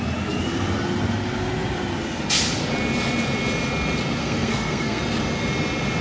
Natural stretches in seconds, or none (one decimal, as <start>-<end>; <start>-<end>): 0.0-4.2; 5.0-6.0